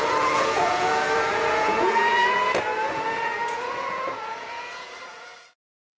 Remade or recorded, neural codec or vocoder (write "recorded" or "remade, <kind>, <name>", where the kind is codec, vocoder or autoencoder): remade, vocoder, Vocos